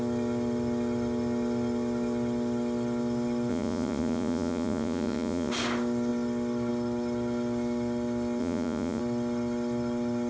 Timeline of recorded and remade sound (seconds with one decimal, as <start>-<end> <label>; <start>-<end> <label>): 0.0-3.5 recorded; 3.5-5.5 remade; 5.5-8.4 recorded; 8.4-9.0 remade; 9.0-10.3 recorded